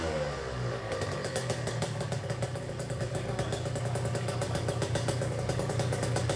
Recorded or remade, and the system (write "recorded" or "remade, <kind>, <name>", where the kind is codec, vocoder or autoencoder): remade, codec, DAC